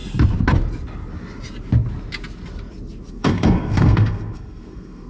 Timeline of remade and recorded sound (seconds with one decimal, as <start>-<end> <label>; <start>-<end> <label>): 0.0-3.1 recorded; 3.1-5.1 remade